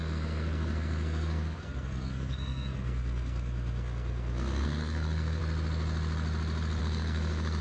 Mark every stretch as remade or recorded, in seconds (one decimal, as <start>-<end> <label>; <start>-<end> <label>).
0.0-5.4 remade; 5.4-6.8 recorded; 6.8-7.6 remade